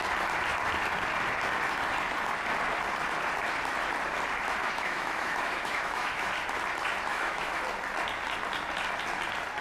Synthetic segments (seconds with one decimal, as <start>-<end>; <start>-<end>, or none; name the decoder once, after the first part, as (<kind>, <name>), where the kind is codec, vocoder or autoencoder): 4.6-6.3 (autoencoder, DAC-VAE); 7.1-7.6